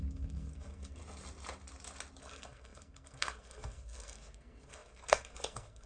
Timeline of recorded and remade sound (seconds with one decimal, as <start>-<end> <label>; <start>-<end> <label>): 0.0-1.0 remade; 1.0-2.2 recorded; 2.2-5.9 remade